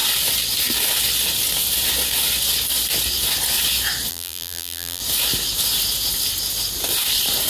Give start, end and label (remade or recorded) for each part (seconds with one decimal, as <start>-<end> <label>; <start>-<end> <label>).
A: 0.0-4.1 recorded; 4.1-5.0 remade; 5.0-7.5 recorded